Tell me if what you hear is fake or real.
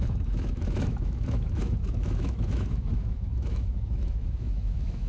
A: fake